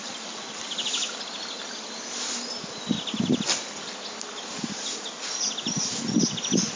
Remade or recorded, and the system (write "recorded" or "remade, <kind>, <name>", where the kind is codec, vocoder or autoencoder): recorded